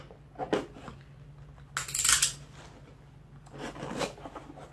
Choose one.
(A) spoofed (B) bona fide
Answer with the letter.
B